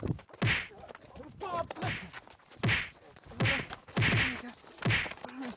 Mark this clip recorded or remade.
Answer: recorded